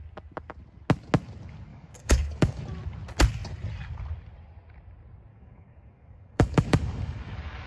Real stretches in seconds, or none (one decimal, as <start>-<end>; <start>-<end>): 0.0-1.7; 2.6-5.3